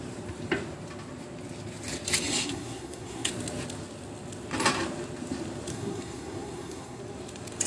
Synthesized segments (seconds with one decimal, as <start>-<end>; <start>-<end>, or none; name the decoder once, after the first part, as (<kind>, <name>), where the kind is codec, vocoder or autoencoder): 2.3-3.3 (codec, SNAC); 5.7-7.0